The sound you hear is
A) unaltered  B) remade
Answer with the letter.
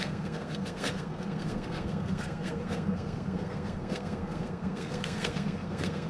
B